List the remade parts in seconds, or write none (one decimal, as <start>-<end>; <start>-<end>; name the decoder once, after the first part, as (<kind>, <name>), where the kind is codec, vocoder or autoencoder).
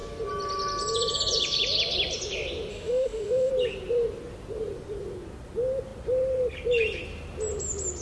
2.7-3.5 (autoencoder, DAC-VAE)